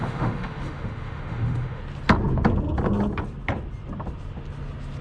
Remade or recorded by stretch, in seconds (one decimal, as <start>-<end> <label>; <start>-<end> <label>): 0.0-1.8 remade; 1.8-5.0 recorded